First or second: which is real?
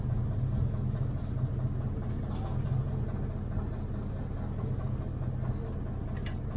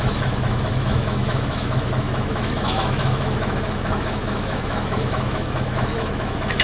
first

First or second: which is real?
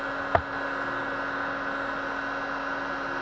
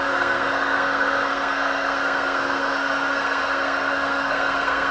first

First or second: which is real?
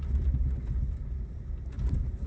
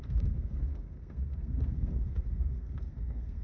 first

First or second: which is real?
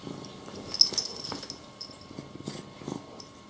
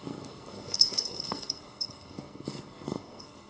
first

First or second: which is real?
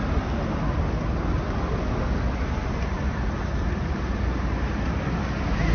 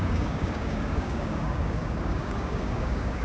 first